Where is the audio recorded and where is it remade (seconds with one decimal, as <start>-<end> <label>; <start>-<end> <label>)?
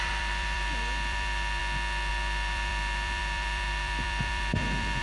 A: 0.0-1.6 remade; 1.6-2.1 recorded; 2.1-5.0 remade